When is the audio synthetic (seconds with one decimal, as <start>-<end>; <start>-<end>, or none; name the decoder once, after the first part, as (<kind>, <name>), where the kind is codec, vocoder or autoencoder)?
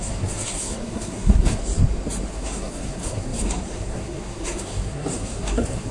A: 0.0-1.6 (codec, SNAC); 2.3-5.9